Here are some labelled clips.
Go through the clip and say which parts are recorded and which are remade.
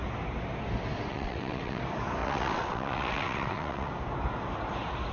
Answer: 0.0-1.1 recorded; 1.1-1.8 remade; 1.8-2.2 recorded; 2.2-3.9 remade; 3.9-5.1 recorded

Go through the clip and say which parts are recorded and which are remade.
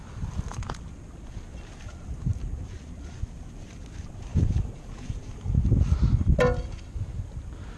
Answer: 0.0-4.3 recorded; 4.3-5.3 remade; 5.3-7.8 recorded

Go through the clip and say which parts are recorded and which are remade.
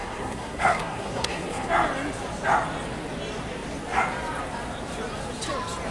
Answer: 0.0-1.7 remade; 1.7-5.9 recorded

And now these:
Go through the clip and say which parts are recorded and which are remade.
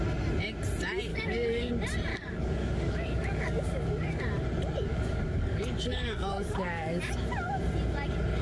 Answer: 0.0-1.1 recorded; 1.1-1.7 remade; 1.7-2.1 recorded; 2.1-4.2 remade; 4.2-4.9 recorded; 4.9-7.0 remade; 7.0-8.4 recorded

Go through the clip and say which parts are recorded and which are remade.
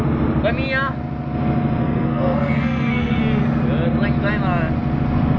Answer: 0.0-1.8 recorded; 1.8-3.2 remade; 3.2-5.4 recorded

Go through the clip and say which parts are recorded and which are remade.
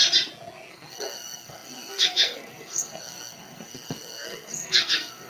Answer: 0.0-0.7 recorded; 0.7-5.3 remade